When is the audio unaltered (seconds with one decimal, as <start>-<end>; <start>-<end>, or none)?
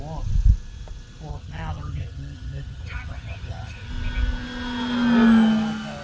0.0-1.3; 3.9-6.0